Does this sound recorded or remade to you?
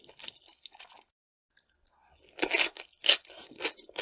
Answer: recorded